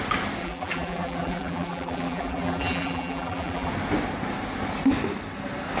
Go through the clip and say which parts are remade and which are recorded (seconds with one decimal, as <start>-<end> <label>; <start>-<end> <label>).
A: 0.0-0.4 recorded; 0.4-3.7 remade; 3.7-5.8 recorded